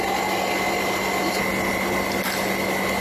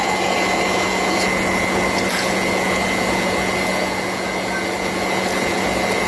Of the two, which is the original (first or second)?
first